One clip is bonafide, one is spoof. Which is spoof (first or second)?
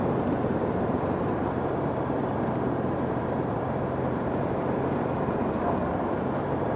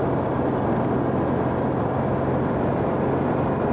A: first